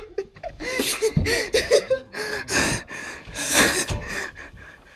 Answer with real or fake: fake